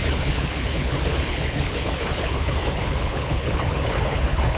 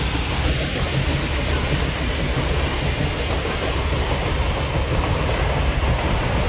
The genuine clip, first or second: second